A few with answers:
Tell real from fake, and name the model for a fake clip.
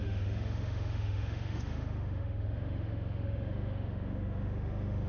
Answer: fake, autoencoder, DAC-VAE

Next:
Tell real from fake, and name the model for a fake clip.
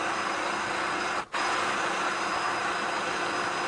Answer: real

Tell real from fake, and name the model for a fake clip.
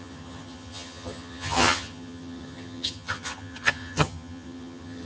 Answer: fake, vocoder, HiFi-GAN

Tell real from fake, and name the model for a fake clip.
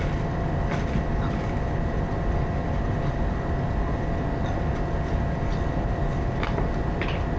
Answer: real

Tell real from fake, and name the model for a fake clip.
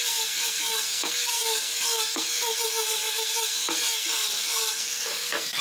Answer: fake, codec, SNAC